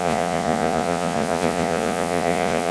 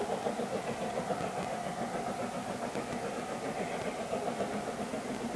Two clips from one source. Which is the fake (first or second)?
first